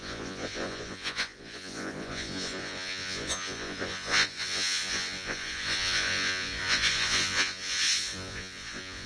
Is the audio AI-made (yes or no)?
yes